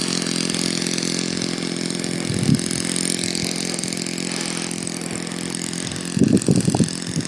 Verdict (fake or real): real